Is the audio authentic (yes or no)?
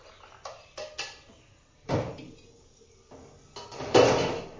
yes